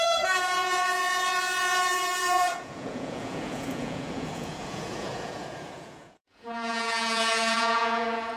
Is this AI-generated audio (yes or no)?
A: yes